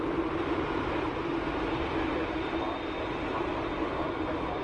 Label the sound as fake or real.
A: real